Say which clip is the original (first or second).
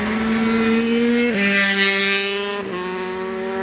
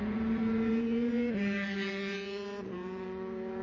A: first